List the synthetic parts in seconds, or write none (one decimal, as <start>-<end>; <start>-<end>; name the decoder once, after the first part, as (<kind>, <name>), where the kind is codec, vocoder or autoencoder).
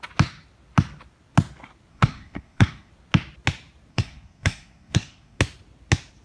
1.9-2.9 (codec, SNAC); 3.9-5.4